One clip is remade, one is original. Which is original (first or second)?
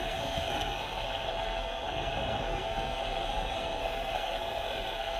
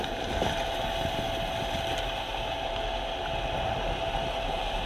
second